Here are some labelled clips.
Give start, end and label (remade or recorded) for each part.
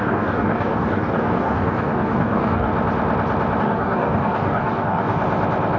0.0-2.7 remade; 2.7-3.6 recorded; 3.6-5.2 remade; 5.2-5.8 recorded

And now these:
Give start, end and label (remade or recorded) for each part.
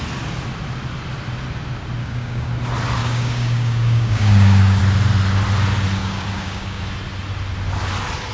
0.0-2.0 recorded; 2.0-2.5 remade; 2.5-3.0 recorded; 3.0-4.8 remade; 4.8-6.0 recorded; 6.0-6.8 remade; 6.8-8.3 recorded